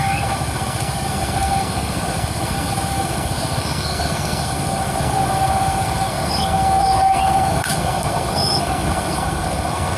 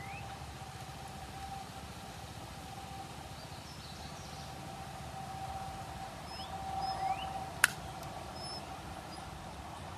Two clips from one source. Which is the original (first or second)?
second